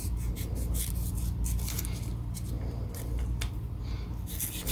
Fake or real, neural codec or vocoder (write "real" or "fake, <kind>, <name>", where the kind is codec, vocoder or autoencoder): real